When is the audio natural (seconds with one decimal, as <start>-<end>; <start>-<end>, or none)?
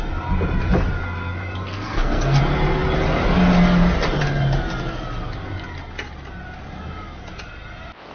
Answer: 0.0-1.7; 2.4-8.1